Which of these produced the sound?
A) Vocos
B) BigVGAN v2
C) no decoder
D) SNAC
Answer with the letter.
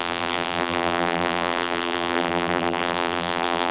B